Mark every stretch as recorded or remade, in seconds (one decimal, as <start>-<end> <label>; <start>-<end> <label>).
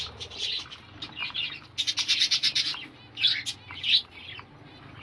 0.0-5.0 recorded